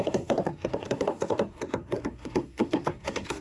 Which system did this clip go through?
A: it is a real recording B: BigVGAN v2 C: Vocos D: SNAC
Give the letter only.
D